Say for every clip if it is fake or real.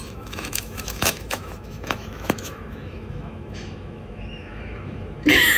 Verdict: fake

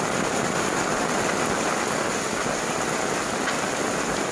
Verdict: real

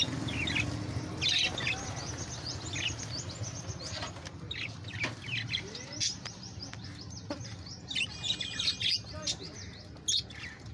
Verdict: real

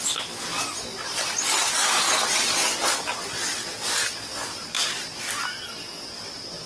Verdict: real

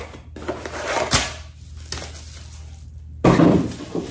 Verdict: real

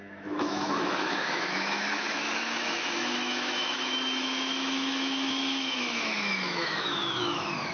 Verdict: fake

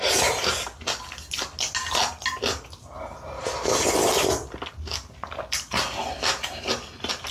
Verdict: real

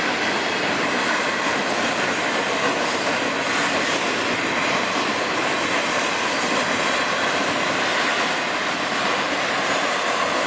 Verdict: real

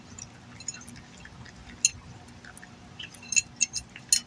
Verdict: real